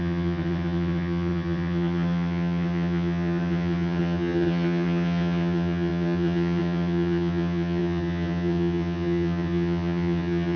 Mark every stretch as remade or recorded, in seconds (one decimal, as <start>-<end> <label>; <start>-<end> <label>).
0.0-10.6 remade